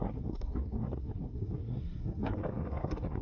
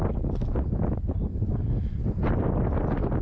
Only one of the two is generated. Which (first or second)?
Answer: first